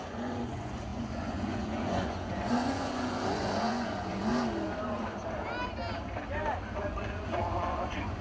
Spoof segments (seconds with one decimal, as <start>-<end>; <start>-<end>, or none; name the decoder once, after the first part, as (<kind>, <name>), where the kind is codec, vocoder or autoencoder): 0.0-4.3 (vocoder, Vocos); 6.8-8.2

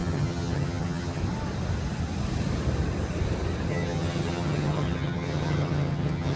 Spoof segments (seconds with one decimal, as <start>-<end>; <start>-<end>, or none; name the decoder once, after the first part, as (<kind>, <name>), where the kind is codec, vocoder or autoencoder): 0.0-1.2 (vocoder, HiFi-GAN); 3.7-6.4

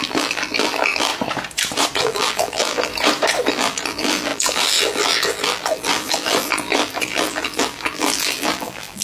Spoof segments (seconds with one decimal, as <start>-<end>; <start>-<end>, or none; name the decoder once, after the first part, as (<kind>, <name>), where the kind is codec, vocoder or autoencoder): 0.0-1.1 (vocoder, BigVGAN v2); 2.0-2.9; 3.5-9.0

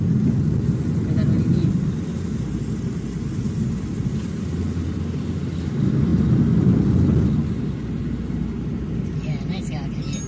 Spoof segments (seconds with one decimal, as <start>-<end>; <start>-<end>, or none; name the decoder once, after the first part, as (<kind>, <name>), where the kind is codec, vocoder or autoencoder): none